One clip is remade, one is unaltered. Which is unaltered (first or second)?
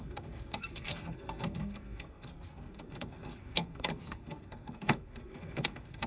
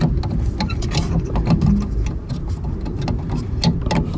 second